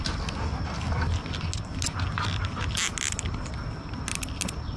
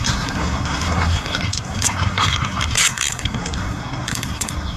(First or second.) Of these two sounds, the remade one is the second